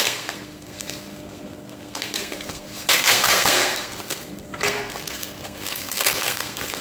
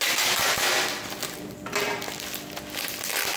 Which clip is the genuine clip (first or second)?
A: second